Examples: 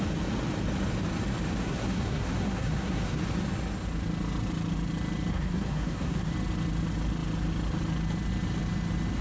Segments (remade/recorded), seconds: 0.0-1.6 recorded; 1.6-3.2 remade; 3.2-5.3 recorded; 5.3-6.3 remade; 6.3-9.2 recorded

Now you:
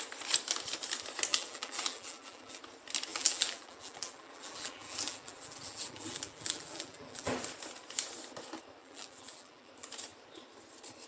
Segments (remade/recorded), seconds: 0.0-1.3 recorded; 1.3-2.6 remade; 2.6-3.1 recorded; 3.1-7.3 remade; 7.3-8.8 recorded; 8.8-9.7 remade; 9.7-11.1 recorded